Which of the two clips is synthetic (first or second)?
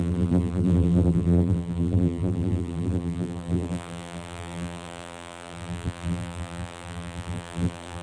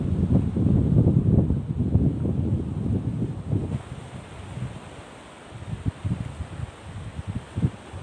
first